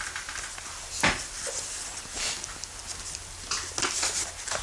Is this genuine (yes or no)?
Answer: yes